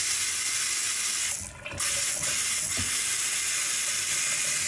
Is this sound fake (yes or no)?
no